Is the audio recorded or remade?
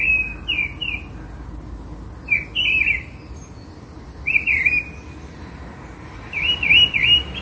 recorded